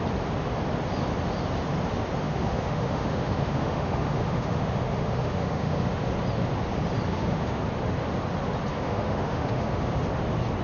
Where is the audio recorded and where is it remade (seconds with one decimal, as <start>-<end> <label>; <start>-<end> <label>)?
0.0-2.2 recorded; 2.2-6.1 remade; 6.1-7.1 recorded; 7.1-7.6 remade; 7.6-8.7 recorded; 8.7-9.9 remade; 9.9-10.6 recorded